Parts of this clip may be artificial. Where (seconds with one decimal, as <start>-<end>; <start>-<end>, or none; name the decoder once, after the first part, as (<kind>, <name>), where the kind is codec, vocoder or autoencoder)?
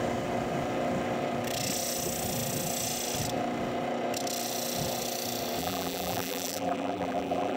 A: 5.6-7.6 (vocoder, BigVGAN v2)